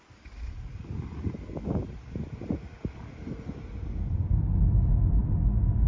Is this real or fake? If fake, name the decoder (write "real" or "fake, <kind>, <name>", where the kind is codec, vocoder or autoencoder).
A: real